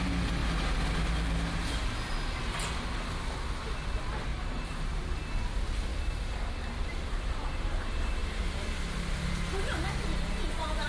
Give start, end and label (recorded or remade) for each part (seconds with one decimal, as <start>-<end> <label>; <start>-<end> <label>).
0.0-4.3 recorded; 4.3-5.0 remade; 5.0-10.9 recorded